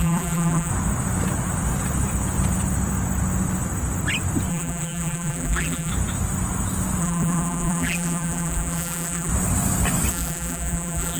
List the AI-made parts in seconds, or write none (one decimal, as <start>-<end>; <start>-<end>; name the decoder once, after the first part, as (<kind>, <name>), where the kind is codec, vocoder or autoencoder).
0.0-0.7 (vocoder, BigVGAN v2); 4.5-5.9; 7.0-9.3; 10.1-11.2